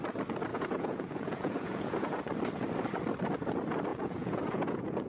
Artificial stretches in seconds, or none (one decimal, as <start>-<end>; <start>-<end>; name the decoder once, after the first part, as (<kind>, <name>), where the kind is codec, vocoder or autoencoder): 0.5-2.2 (vocoder, Vocos); 3.9-5.1